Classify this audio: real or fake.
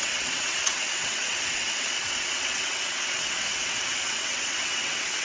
fake